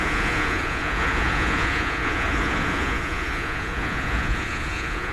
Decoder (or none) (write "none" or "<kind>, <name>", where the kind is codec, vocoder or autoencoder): vocoder, Vocos